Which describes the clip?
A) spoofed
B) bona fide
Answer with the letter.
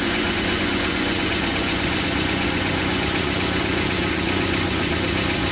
A